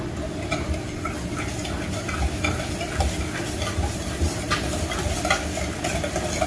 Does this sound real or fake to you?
real